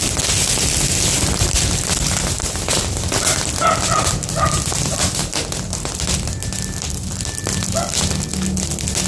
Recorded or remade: recorded